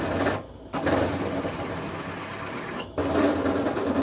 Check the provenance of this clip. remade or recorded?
recorded